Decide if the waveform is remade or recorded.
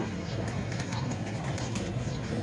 remade